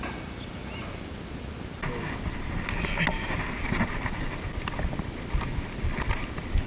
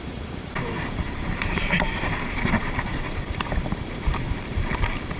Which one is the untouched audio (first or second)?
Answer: first